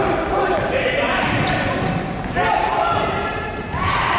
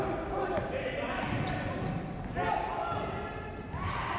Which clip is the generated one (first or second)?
first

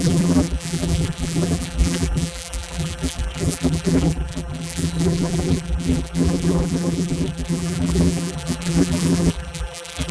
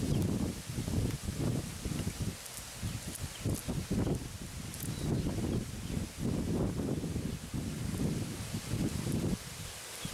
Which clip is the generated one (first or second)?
first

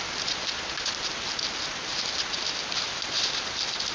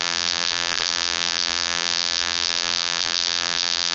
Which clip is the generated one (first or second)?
second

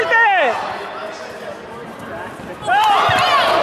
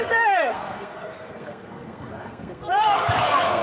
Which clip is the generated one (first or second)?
second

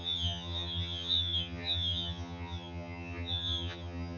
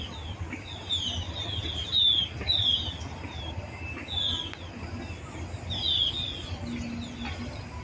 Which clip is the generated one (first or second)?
first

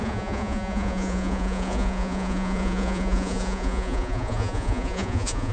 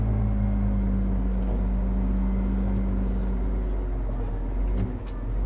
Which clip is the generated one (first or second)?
first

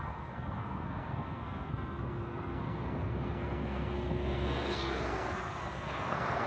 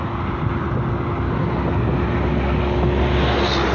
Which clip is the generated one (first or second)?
first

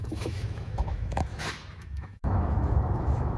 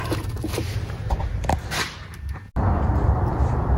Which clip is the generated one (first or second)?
first